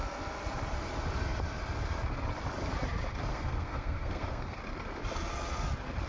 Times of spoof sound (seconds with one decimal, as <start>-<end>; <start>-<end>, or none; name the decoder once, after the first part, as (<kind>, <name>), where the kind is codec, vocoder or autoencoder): 3.3-4.6 (codec, SNAC)